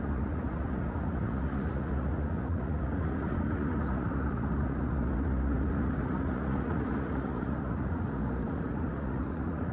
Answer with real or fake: fake